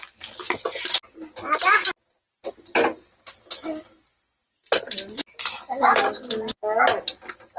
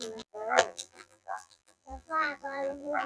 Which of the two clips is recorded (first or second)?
first